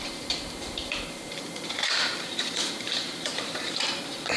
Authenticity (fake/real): fake